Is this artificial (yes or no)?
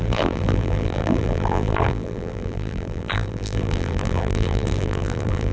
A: yes